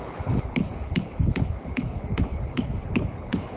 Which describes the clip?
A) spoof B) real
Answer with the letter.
A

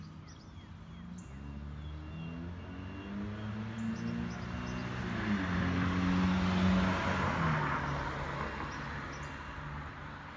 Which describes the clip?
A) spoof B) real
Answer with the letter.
B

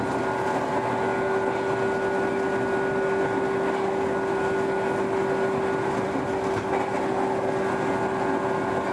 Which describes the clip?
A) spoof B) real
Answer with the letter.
B